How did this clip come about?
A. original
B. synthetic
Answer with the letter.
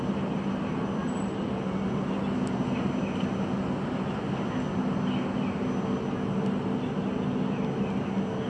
A